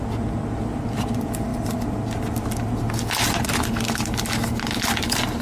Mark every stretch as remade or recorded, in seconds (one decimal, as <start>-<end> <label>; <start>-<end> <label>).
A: 0.0-5.4 recorded